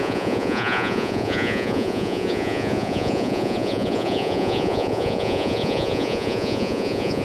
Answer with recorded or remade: remade